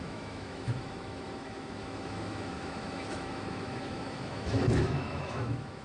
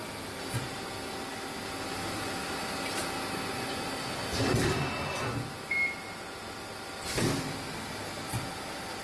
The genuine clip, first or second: second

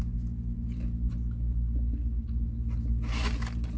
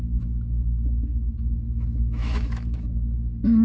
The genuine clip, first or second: first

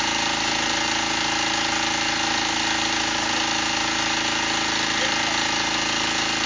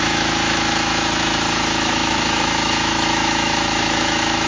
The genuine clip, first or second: first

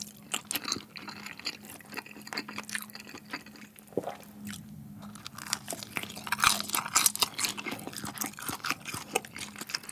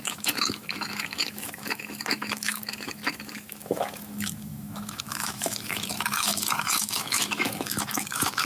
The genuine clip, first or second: first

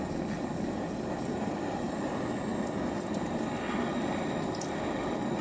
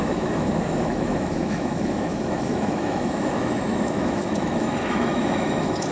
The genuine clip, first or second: first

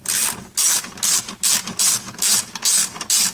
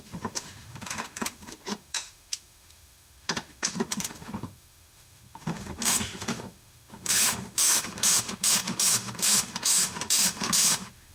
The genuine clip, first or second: first